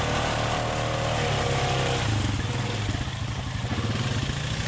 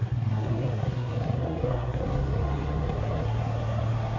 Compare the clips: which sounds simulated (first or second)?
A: second